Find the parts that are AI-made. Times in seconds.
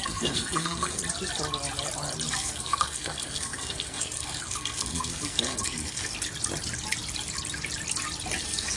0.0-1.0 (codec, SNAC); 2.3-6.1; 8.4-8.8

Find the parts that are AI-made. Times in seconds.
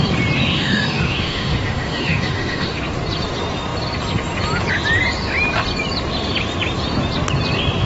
0.4-2.8 (autoencoder, DAC-VAE)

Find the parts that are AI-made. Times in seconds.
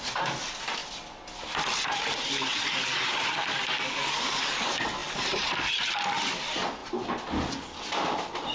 0.8-3.9 (vocoder, BigVGAN v2); 5.0-6.3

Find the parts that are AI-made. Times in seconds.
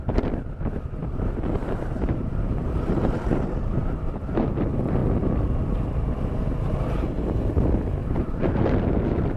1.0-4.3 (vocoder, BigVGAN v2); 8.0-8.7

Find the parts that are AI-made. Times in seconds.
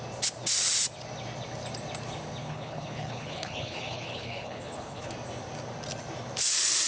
2.4-5.1 (codec, HILCodec)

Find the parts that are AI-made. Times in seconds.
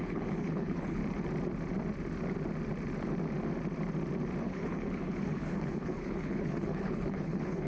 0.0-1.0 (codec, HILCodec); 4.4-7.7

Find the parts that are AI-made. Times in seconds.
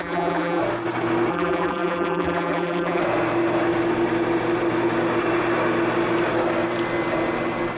0.0-0.6 (vocoder, BigVGAN v2); 1.3-3.0